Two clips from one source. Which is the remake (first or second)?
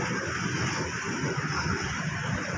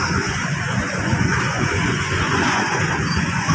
second